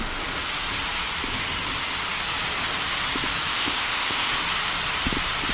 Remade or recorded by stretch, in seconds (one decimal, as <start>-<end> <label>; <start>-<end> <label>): 0.0-3.5 recorded; 3.5-4.3 remade; 4.3-5.5 recorded